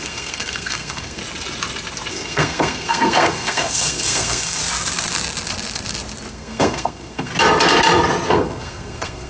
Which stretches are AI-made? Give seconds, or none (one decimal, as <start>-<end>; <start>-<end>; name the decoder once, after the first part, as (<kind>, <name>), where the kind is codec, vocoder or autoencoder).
0.0-1.2 (codec, SNAC); 2.1-4.6; 6.3-7.3; 8.3-9.3